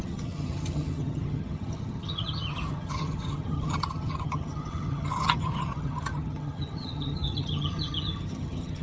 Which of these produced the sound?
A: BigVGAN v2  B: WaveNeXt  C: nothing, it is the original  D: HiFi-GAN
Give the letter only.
D